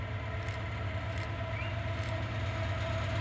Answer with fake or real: real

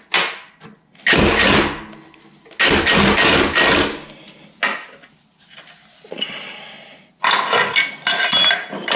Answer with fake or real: real